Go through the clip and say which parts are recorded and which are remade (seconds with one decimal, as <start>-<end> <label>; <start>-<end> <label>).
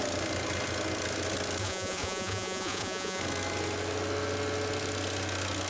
0.0-1.6 recorded; 1.6-3.2 remade; 3.2-5.7 recorded